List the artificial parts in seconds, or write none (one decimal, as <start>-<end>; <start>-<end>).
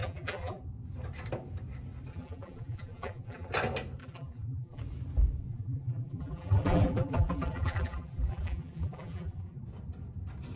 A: 0.0-0.6; 2.1-3.5; 4.0-4.8; 5.5-9.6